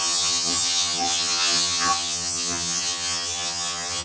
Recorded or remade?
remade